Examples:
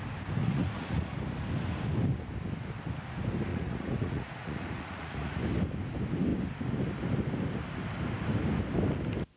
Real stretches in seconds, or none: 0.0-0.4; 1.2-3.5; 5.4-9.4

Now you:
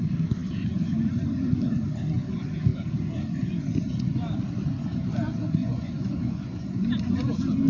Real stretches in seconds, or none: 0.0-5.6; 6.9-7.7

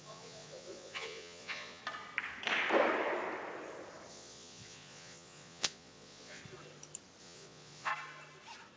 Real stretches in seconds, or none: 1.8-4.1; 6.4-7.2; 7.9-8.8